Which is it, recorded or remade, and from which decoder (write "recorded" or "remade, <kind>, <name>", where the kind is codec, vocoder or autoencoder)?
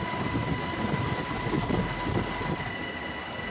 recorded